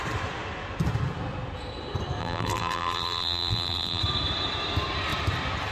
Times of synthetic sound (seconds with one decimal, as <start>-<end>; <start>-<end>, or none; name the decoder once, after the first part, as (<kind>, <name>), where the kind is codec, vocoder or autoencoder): 2.2-4.0 (vocoder, BigVGAN v2)